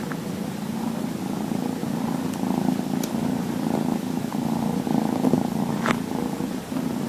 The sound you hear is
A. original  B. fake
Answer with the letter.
A